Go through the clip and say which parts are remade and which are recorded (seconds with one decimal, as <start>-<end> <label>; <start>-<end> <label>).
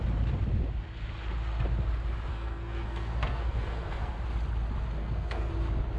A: 0.0-2.3 recorded; 2.3-4.2 remade; 4.2-5.0 recorded; 5.0-5.5 remade; 5.5-6.0 recorded